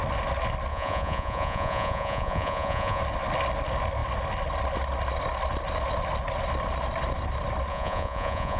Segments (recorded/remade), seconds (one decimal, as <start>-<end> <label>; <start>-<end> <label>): 0.0-0.7 recorded; 0.7-3.0 remade; 3.0-7.7 recorded; 7.7-8.6 remade